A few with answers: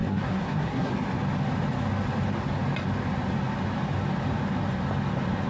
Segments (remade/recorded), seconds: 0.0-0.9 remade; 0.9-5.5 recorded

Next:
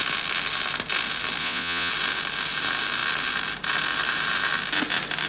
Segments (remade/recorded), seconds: 0.0-1.4 recorded; 1.4-1.9 remade; 1.9-5.3 recorded

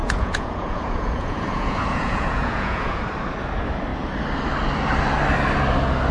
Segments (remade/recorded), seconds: 0.0-3.0 remade; 3.0-6.1 recorded

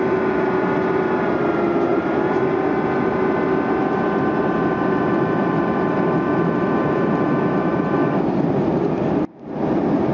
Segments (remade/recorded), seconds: 0.0-10.1 recorded

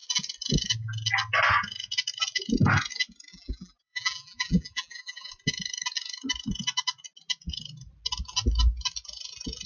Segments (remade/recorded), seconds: 0.0-3.3 recorded; 3.3-5.3 remade; 5.3-9.7 recorded

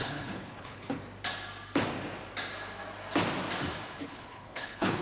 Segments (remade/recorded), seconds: 0.0-1.0 remade; 1.0-4.0 recorded; 4.0-5.0 remade